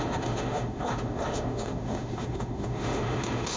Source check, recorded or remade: remade